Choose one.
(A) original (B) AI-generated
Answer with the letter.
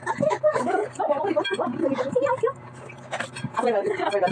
A